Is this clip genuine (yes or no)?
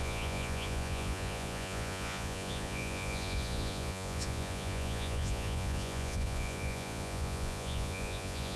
no